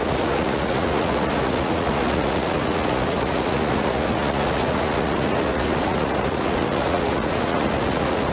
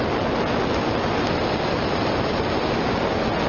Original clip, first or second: second